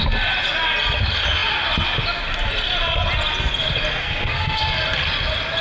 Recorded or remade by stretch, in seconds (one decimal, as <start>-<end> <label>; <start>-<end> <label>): 0.0-4.0 recorded; 4.0-4.6 remade; 4.6-5.6 recorded